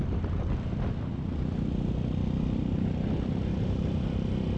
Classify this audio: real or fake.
real